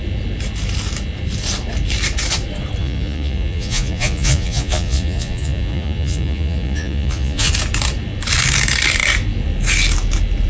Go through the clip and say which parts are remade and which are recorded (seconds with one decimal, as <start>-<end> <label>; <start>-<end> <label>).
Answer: 0.0-2.8 recorded; 2.8-7.5 remade; 7.5-10.5 recorded